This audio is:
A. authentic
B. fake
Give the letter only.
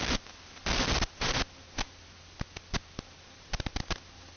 A